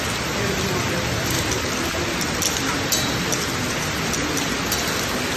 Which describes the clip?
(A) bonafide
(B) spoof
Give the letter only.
A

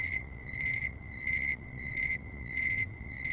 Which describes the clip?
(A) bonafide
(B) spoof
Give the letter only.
B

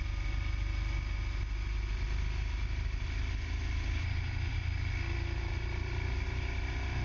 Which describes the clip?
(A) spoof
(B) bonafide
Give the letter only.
B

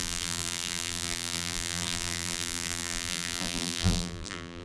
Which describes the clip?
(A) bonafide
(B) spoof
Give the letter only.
B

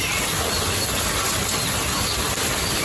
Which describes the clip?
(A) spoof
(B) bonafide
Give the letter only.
B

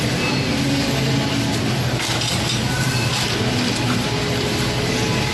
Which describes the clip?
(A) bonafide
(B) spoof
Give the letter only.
A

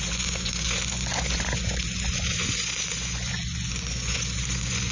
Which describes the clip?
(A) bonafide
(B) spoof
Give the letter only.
B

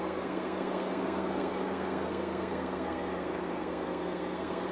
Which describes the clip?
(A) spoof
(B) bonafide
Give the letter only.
A